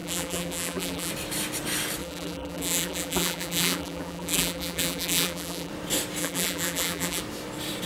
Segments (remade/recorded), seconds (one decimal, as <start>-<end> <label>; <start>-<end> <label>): 0.0-1.1 remade; 1.1-2.0 recorded; 2.0-5.7 remade; 5.7-6.2 recorded; 6.2-7.2 remade; 7.2-7.9 recorded